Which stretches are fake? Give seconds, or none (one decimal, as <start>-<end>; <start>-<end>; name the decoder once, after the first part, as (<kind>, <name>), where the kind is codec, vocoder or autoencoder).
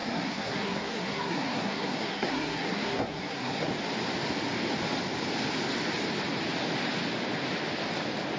0.0-3.7 (codec, SNAC)